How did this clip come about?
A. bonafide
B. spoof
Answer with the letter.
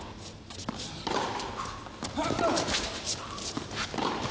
A